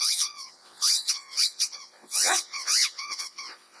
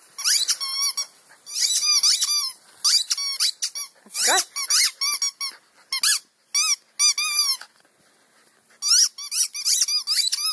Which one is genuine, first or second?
second